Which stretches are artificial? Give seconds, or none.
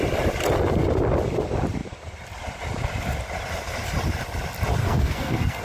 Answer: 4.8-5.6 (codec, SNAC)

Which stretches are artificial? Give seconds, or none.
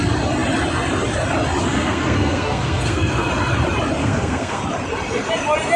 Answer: 1.6-3.3 (codec, SNAC); 4.0-4.6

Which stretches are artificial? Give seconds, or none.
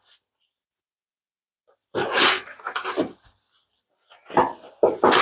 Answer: none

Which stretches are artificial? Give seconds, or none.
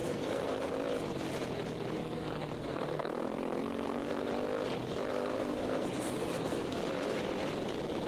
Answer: 0.0-0.7 (codec, SNAC); 2.0-4.3; 5.1-6.9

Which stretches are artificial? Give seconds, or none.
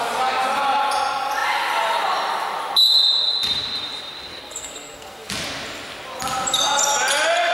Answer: 4.3-5.3 (codec, SNAC)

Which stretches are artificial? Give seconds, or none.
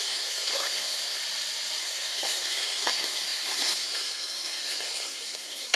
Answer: 0.0-1.2 (codec, SNAC); 1.8-5.8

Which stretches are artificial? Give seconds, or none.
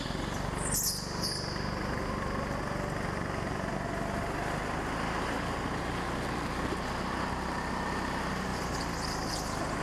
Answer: none